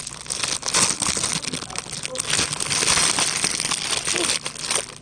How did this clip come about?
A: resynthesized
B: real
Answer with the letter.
B